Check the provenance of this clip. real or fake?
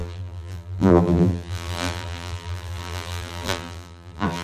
fake